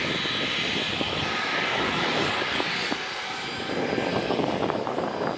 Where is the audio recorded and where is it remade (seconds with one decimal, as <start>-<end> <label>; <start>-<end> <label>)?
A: 0.0-0.9 recorded; 0.9-2.9 remade; 2.9-4.1 recorded; 4.1-5.0 remade; 5.0-5.4 recorded